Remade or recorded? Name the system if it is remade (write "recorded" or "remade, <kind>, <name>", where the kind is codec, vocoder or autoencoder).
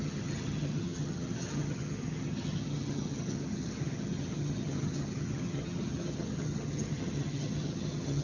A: remade, vocoder, HiFi-GAN